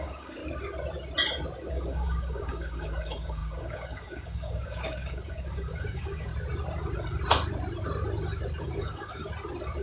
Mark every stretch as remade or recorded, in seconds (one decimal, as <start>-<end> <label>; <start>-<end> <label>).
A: 0.0-0.4 remade; 0.4-1.7 recorded; 1.7-6.3 remade; 6.3-8.6 recorded; 8.6-9.2 remade; 9.2-9.8 recorded